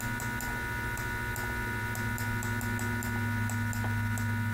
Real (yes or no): yes